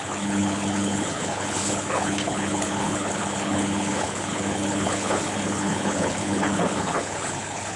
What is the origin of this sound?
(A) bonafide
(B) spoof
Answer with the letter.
B